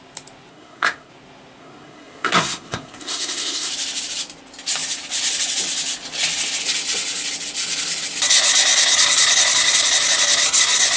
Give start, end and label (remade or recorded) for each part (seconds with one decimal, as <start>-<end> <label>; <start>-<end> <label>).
0.0-0.5 recorded; 0.5-1.1 remade; 1.1-1.6 recorded; 1.6-3.7 remade; 3.7-11.0 recorded